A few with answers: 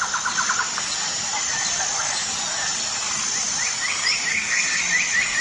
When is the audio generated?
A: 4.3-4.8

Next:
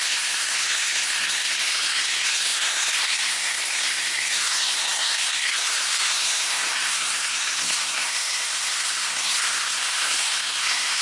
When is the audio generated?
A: 0.0-11.0

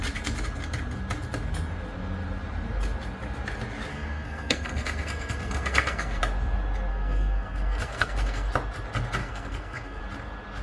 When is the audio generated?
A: 3.9-6.2; 6.9-8.5; 9.2-10.0

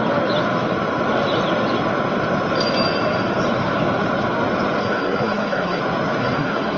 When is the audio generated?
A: 4.8-5.8; 6.2-6.8

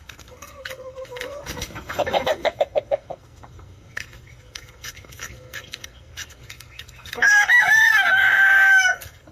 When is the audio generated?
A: 0.0-9.3

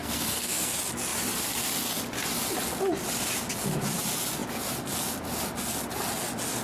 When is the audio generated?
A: 0.0-0.7

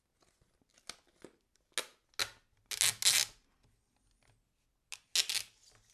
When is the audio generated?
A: none

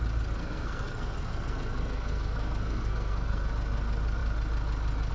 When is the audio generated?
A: 0.4-3.5